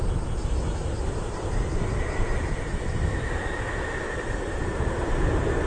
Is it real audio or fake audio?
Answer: real